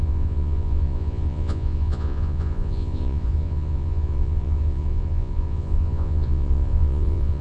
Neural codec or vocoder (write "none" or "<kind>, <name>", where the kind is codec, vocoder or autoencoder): vocoder, Vocos